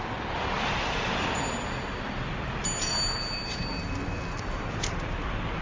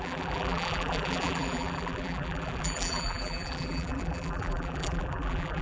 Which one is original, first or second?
first